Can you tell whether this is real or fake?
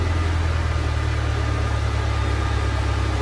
real